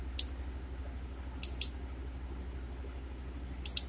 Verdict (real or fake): real